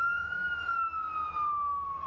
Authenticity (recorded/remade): recorded